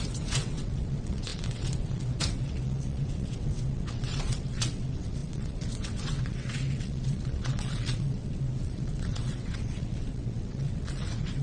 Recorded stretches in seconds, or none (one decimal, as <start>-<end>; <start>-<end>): none